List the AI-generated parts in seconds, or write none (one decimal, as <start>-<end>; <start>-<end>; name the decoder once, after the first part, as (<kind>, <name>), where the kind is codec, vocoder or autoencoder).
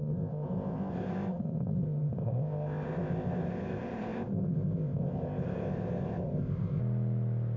0.0-6.8 (codec, ZipCodec)